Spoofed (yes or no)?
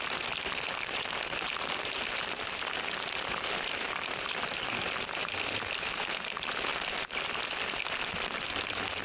no